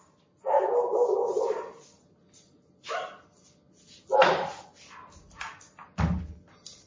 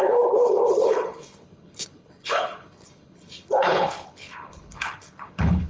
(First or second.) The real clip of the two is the first